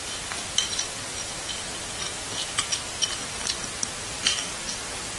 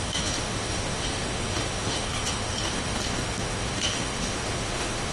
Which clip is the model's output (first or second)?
second